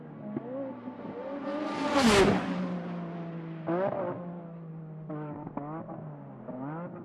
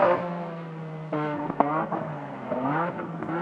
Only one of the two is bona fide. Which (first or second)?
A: first